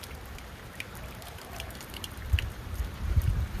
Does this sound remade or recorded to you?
remade